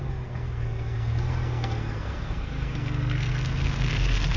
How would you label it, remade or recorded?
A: remade